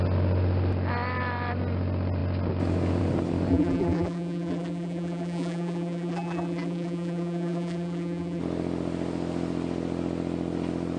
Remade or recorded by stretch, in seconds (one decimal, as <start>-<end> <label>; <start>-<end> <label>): 0.0-3.5 recorded; 3.5-8.4 remade; 8.4-11.0 recorded

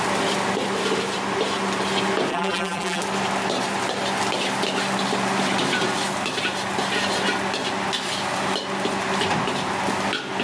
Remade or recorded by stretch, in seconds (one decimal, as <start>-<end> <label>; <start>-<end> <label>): 0.0-2.3 recorded; 2.3-3.0 remade; 3.0-10.4 recorded

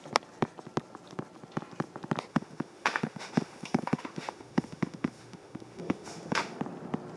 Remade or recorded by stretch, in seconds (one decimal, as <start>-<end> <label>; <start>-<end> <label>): 0.0-2.3 recorded; 2.3-6.6 remade; 6.6-7.2 recorded

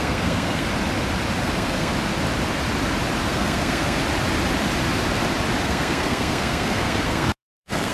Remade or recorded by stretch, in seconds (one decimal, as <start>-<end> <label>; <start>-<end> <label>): 0.0-0.7 remade; 0.7-1.4 recorded; 1.4-1.9 remade; 1.9-3.3 recorded; 3.3-4.0 remade; 4.0-5.6 recorded; 5.6-7.9 remade

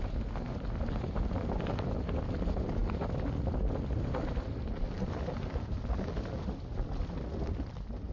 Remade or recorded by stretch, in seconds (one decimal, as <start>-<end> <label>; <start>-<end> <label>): 0.0-8.1 recorded

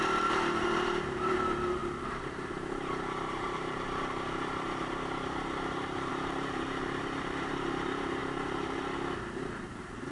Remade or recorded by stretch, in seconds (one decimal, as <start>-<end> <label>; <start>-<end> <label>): 0.0-10.1 remade